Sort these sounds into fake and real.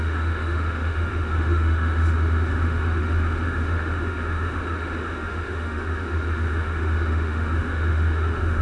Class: fake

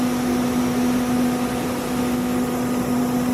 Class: real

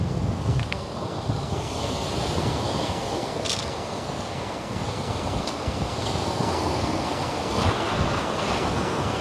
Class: fake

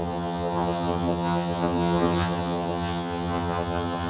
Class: fake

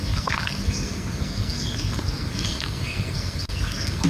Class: fake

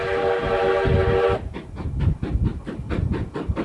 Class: real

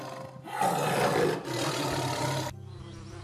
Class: real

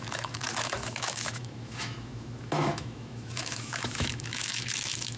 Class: fake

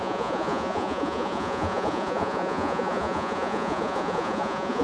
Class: fake